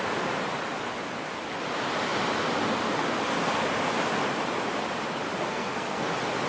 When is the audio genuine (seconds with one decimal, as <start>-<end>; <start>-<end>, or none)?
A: 0.0-5.5; 6.1-6.5